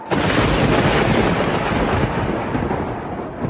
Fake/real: real